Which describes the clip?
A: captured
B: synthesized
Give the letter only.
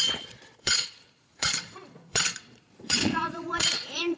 B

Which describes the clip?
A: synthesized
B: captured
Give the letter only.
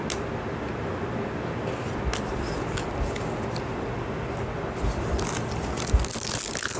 B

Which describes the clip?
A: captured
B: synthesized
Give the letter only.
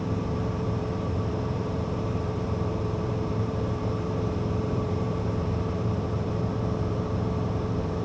B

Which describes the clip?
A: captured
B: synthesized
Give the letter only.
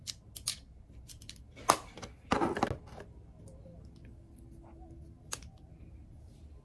A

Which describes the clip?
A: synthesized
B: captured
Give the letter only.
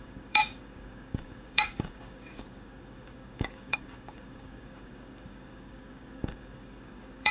A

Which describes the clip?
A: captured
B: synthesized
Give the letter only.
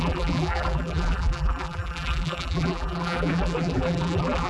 B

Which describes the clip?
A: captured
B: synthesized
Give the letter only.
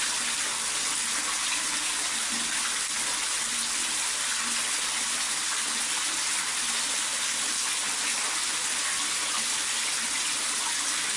A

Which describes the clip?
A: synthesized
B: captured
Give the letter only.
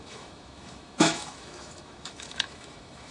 A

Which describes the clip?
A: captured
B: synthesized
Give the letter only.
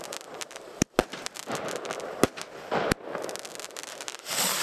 A